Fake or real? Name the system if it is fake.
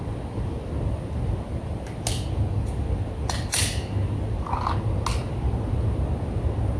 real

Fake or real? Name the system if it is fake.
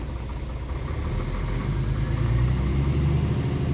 real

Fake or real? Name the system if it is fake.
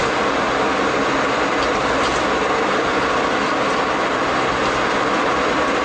real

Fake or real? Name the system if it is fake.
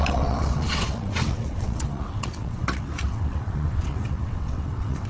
fake, vocoder, WaveNeXt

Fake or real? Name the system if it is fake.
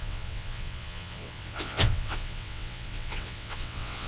fake, vocoder, WaveNeXt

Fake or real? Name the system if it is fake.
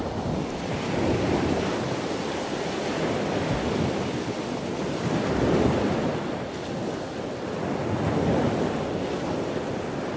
real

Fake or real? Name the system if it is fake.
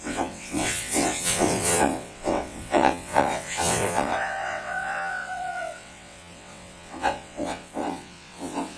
fake, vocoder, WaveNeXt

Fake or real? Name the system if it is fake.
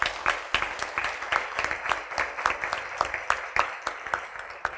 real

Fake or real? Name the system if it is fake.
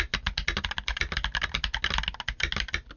real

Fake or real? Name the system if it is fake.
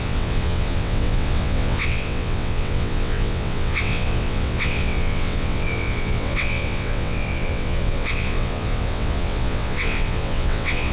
fake, vocoder, WaveNeXt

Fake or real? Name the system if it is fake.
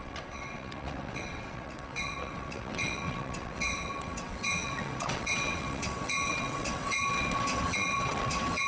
fake, vocoder, WaveNeXt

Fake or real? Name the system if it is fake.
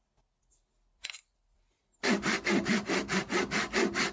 real